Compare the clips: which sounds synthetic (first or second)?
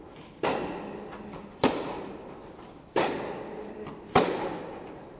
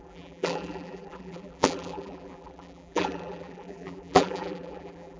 second